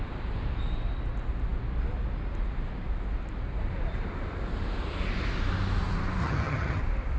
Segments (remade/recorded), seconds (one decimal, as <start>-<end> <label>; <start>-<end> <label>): 0.0-6.2 recorded; 6.2-6.8 remade; 6.8-7.2 recorded